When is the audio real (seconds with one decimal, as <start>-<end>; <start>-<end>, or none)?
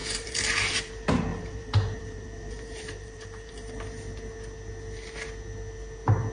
0.9-1.3; 3.7-6.3